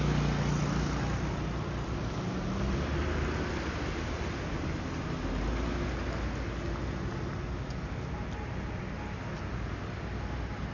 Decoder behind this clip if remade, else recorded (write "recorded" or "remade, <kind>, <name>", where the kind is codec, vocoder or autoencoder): recorded